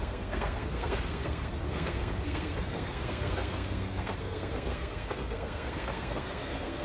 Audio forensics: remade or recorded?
remade